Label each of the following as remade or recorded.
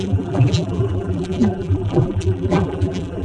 remade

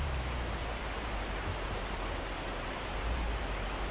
remade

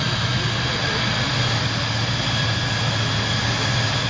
recorded